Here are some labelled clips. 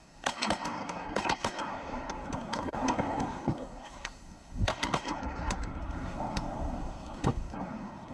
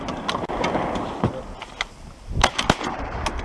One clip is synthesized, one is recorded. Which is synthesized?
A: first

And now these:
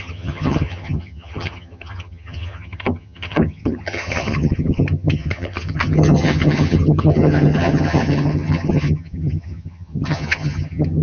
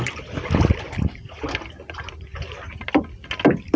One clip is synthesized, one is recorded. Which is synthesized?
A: first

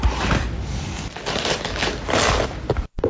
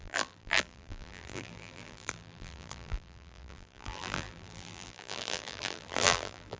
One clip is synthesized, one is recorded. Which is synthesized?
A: second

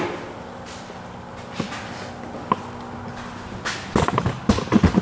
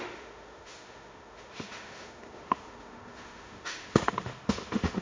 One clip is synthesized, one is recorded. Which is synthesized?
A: second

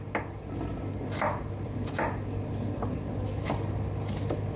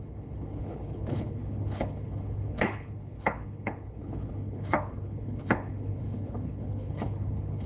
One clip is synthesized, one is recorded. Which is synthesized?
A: second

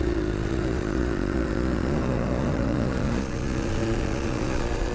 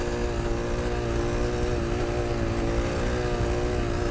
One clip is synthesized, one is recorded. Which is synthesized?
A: first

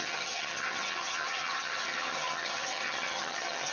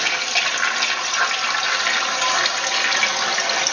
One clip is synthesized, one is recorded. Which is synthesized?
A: first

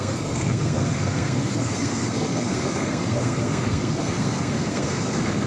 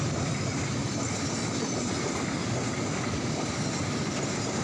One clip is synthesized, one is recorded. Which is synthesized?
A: first